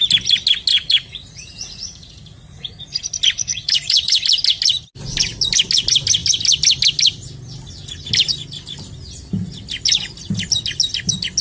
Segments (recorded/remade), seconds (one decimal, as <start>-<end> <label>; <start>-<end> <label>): 0.0-0.7 recorded; 0.7-3.0 remade; 3.0-3.5 recorded; 3.5-4.2 remade; 4.2-11.4 recorded